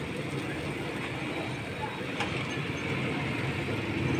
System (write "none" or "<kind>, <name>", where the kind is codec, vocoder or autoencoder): none